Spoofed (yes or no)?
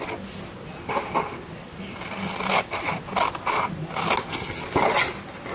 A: no